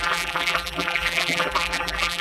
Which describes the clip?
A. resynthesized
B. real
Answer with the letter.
A